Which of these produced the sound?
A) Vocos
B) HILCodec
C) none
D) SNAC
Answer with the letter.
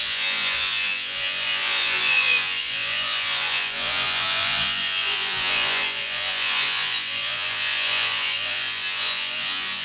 A